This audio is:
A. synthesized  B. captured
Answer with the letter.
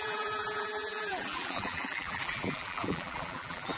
A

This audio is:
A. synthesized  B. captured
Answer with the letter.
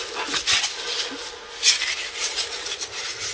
B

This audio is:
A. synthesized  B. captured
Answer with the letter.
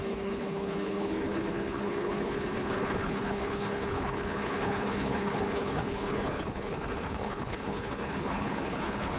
A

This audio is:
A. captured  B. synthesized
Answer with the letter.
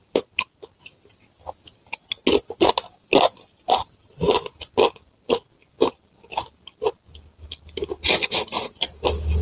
A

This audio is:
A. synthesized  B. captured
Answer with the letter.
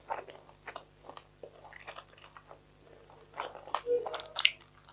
B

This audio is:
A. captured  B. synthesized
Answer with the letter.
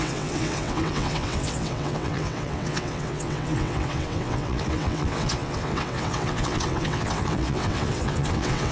B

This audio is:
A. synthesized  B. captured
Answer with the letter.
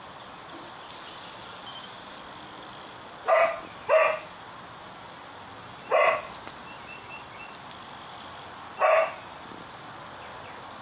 B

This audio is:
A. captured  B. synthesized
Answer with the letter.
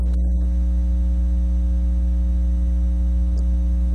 A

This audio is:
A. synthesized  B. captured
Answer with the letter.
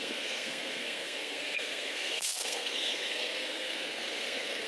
A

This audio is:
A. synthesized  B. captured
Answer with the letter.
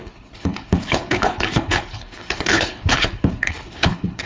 A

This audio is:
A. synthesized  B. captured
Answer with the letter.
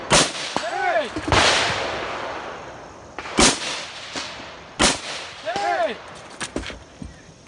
B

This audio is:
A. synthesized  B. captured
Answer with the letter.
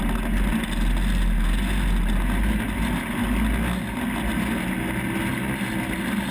B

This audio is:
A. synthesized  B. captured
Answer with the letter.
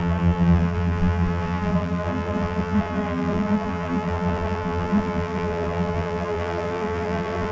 A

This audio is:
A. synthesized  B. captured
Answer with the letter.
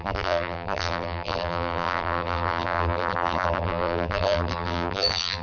A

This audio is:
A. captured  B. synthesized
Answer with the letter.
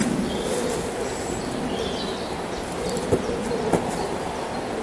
A